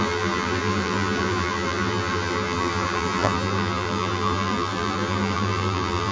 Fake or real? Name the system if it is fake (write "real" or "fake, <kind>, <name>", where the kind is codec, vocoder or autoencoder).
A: fake, vocoder, BigVGAN v2